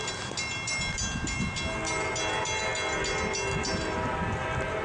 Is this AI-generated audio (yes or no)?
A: no